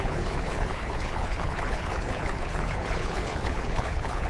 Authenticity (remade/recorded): remade